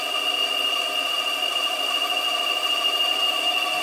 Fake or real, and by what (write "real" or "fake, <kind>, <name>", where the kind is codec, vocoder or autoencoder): real